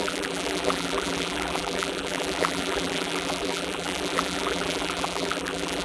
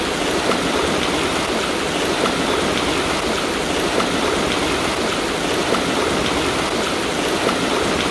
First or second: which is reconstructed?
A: first